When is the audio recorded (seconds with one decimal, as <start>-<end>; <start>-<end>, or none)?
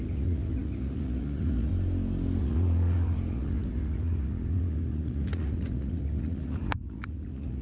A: 1.7-2.4